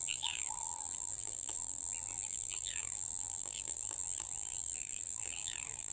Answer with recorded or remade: remade